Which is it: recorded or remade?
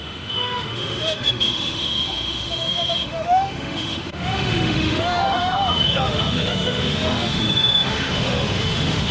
remade